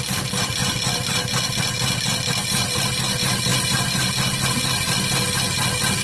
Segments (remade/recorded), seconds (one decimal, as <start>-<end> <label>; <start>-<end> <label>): 0.0-3.5 recorded; 3.5-4.1 remade; 4.1-6.0 recorded